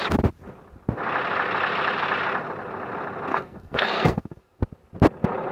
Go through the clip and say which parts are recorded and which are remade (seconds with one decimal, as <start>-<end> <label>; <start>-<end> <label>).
0.0-3.3 recorded; 3.3-4.6 remade; 4.6-5.5 recorded